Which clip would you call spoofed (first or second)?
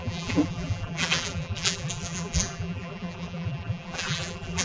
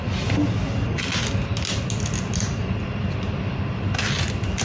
first